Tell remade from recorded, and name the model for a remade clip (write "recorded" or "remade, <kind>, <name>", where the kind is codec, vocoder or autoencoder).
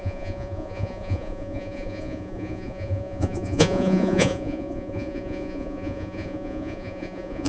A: remade, vocoder, Vocos